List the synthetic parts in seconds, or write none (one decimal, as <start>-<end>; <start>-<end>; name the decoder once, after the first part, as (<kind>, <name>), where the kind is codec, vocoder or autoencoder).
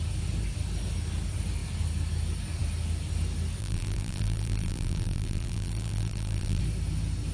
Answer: 3.6-6.6 (vocoder, BigVGAN v2)